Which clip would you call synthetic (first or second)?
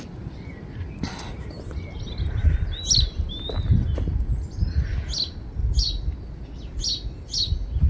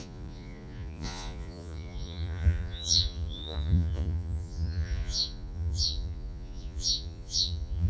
second